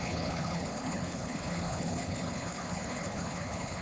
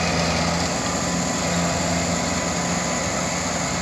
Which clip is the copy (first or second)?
first